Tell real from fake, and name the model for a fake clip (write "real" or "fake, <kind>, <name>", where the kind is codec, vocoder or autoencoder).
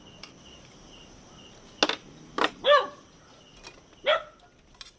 real